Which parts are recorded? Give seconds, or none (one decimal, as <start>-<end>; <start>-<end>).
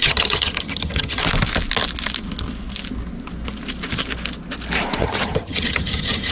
1.2-5.0